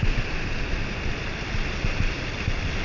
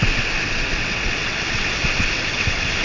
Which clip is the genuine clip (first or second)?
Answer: first